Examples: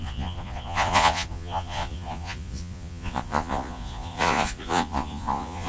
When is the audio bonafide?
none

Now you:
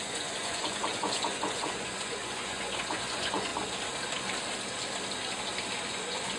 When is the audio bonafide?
3.5-5.9